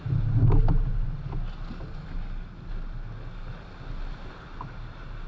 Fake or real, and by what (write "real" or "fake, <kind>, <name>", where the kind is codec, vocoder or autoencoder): real